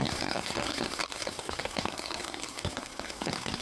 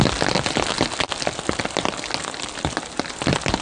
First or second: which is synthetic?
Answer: first